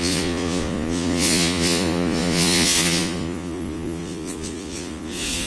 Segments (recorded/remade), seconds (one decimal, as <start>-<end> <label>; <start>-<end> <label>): 0.0-5.5 remade